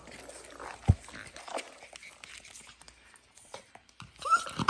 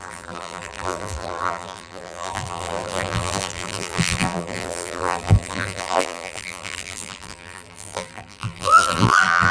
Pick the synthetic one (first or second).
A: second